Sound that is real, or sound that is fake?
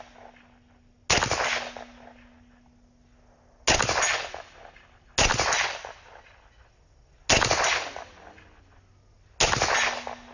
real